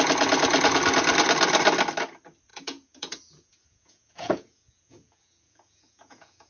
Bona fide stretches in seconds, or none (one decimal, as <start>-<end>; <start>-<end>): 0.0-2.5